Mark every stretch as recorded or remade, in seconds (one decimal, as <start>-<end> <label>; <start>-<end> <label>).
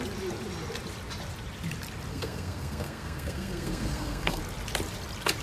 0.0-2.1 recorded; 2.1-4.4 remade; 4.4-5.4 recorded